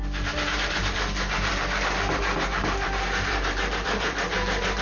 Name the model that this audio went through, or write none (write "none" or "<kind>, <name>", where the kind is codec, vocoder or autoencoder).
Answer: vocoder, BigVGAN v2